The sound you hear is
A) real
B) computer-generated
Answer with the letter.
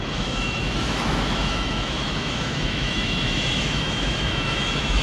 B